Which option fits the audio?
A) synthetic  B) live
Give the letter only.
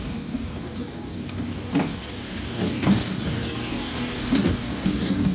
A